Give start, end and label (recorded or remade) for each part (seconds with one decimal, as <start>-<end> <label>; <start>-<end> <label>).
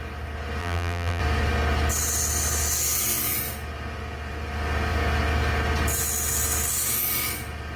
0.0-0.6 recorded; 0.6-1.2 remade; 1.2-7.8 recorded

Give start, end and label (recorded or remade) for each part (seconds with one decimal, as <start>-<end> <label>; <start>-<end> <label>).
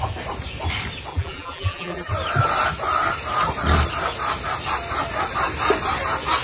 0.0-1.1 recorded; 1.1-2.1 remade; 2.1-6.4 recorded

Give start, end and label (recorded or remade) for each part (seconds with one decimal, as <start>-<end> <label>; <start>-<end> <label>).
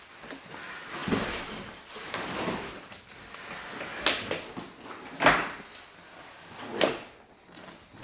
0.0-1.0 recorded; 1.0-3.4 remade; 3.4-8.0 recorded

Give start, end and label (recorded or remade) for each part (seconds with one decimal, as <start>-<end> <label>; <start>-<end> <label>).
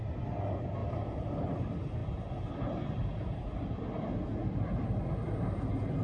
0.0-6.0 recorded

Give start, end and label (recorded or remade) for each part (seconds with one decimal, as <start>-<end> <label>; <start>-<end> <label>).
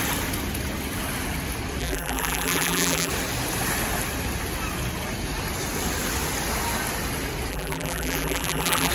0.0-1.8 recorded; 1.8-3.1 remade; 3.1-7.5 recorded; 7.5-8.9 remade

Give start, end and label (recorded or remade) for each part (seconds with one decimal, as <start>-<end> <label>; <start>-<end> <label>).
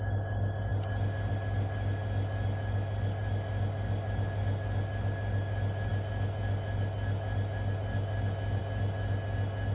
0.0-9.7 recorded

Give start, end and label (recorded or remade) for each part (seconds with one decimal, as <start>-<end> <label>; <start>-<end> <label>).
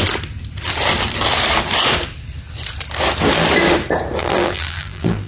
0.0-4.2 recorded; 4.2-5.3 remade